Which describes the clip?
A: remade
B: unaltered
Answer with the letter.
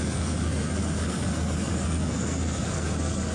A